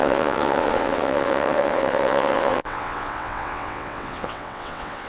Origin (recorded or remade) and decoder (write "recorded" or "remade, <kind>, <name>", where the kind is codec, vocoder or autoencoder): remade, vocoder, WaveNeXt